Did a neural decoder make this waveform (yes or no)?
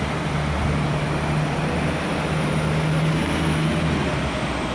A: no